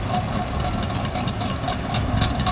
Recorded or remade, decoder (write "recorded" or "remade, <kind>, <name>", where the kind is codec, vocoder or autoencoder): recorded